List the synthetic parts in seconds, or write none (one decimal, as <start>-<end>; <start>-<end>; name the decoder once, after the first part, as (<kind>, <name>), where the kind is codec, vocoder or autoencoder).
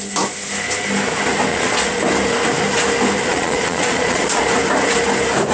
1.5-2.0 (vocoder, Vocos); 3.2-4.4